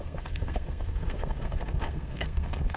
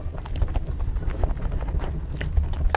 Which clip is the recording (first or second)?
second